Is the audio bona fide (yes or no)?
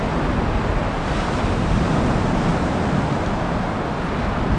yes